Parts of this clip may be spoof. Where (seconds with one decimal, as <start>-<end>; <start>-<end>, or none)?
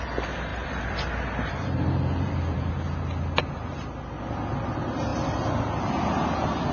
0.5-2.7; 5.1-5.6